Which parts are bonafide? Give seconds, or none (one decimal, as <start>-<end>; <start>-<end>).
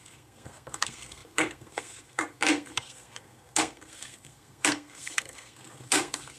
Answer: none